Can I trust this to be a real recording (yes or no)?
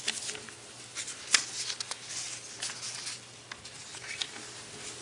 yes